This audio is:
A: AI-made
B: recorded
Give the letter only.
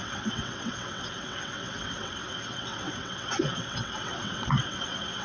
A